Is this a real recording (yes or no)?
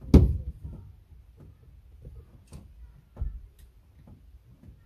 yes